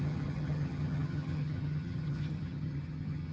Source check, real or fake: fake